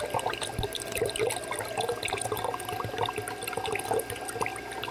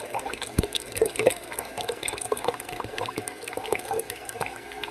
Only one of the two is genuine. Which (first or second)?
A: first